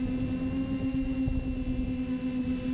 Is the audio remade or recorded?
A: recorded